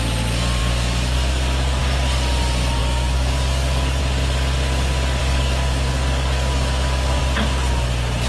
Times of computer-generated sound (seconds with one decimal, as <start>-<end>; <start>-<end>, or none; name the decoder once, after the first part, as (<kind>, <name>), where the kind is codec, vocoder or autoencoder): 0.6-1.8 (codec, DAC); 2.8-4.0; 5.2-7.2